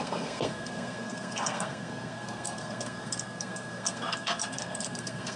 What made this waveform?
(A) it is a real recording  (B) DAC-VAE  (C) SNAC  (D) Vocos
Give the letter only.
C